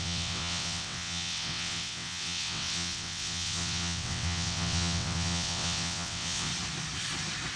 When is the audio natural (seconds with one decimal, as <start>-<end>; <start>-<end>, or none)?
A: 6.5-7.6